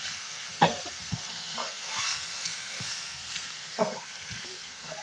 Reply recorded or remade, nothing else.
remade